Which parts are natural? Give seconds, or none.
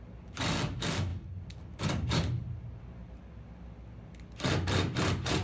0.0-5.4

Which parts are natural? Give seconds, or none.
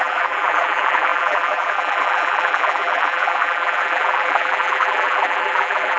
none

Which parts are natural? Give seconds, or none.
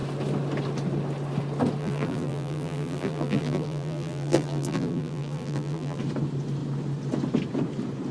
0.0-1.8; 6.0-8.1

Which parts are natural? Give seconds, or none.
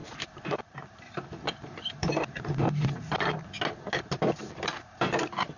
3.4-5.6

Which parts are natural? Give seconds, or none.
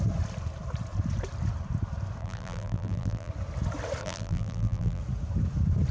0.0-2.2; 3.3-4.0; 5.0-5.9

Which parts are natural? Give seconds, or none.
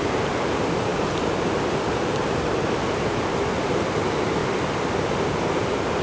0.0-6.0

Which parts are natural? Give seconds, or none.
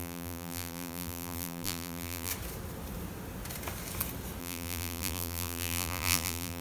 2.3-4.4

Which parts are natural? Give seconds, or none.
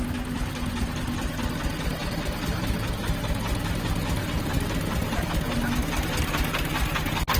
0.0-2.0; 2.9-4.2; 5.3-7.4